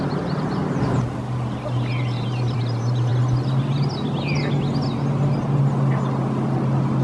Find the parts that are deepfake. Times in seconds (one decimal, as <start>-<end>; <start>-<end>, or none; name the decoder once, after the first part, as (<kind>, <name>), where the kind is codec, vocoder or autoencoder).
0.0-0.6 (vocoder, BigVGAN v2); 2.0-3.1